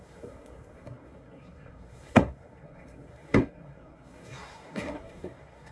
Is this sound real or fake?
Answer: fake